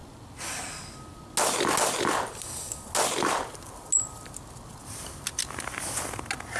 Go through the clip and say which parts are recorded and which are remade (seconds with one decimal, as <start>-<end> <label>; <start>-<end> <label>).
0.0-6.6 recorded